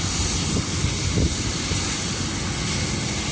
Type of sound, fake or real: real